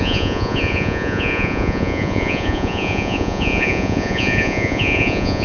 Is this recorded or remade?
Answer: remade